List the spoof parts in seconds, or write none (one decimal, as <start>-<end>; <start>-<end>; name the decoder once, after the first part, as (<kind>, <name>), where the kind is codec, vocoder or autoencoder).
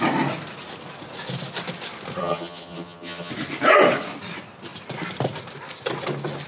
2.2-3.3 (vocoder, HiFi-GAN)